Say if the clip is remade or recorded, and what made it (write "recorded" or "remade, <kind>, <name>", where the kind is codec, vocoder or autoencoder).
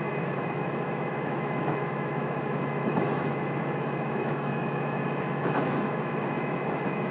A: remade, autoencoder, DAC-VAE